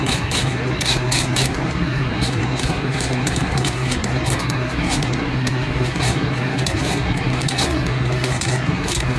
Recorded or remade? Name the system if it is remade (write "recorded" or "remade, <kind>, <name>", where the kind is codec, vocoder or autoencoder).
remade, codec, SNAC